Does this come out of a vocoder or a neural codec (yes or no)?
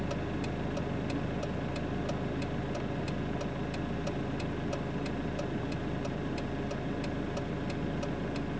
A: no